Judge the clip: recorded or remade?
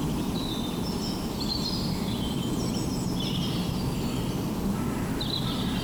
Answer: recorded